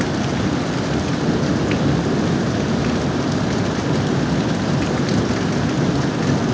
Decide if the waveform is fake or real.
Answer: real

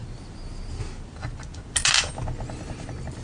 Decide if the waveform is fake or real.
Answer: real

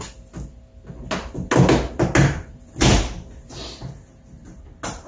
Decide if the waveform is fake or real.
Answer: real